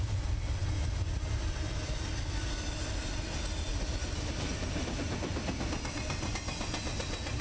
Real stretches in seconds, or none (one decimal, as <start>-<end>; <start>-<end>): 0.0-7.4